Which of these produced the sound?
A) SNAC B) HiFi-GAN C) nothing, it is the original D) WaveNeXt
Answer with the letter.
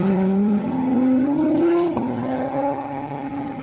B